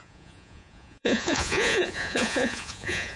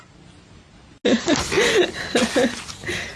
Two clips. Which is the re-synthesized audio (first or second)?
first